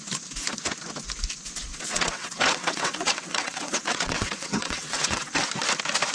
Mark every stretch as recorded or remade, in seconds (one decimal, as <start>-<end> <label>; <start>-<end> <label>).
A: 0.0-1.7 recorded; 1.7-5.3 remade; 5.3-6.1 recorded